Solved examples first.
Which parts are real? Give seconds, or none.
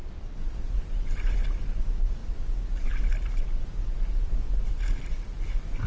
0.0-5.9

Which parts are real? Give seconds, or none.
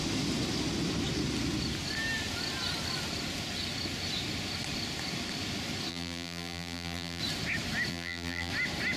0.0-5.9; 7.2-7.9; 8.5-9.0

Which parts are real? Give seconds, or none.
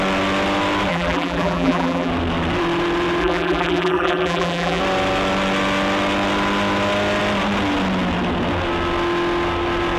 0.0-0.9; 2.1-3.2; 4.8-10.0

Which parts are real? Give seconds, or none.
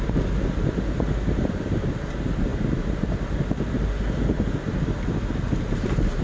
0.0-6.2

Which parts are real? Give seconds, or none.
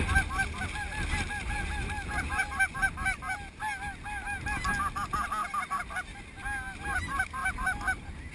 0.0-5.4; 6.2-7.4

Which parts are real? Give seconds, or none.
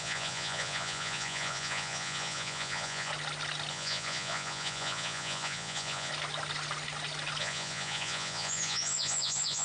3.1-3.7; 6.1-7.4